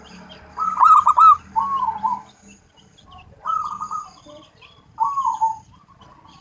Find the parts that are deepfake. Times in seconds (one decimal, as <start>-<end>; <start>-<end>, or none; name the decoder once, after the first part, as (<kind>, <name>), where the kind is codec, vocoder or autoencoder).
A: 2.9-3.7 (vocoder, BigVGAN v2)